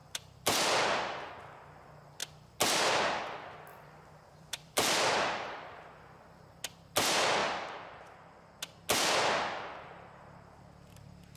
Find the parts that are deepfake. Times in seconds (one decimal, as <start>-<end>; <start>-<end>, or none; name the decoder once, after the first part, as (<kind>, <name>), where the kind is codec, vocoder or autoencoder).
0.0-1.3 (vocoder, BigVGAN v2); 3.7-6.2; 7.4-8.6